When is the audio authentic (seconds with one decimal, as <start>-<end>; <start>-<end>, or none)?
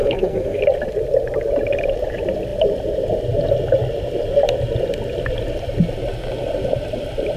0.6-7.4